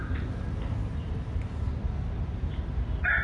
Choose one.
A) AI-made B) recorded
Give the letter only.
B